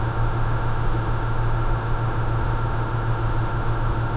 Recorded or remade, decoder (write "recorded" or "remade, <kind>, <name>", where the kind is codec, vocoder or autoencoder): remade, autoencoder, DAC-VAE